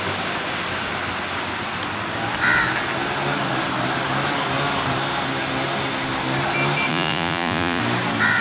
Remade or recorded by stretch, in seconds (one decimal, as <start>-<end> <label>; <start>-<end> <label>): 0.0-6.9 recorded; 6.9-7.8 remade; 7.8-8.4 recorded